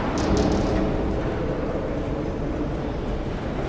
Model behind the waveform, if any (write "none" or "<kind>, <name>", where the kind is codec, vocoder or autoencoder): none